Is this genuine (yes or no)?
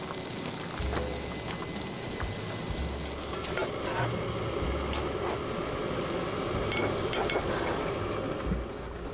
yes